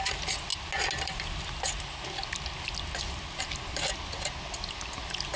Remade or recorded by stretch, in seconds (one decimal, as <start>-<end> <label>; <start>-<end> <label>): 0.0-5.4 recorded